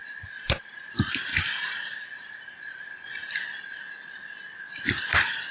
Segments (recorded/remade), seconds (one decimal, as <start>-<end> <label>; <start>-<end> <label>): 0.0-0.9 remade; 0.9-1.3 recorded; 1.3-3.8 remade; 3.8-5.5 recorded